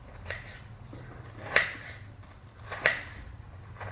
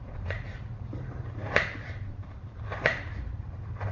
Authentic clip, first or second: first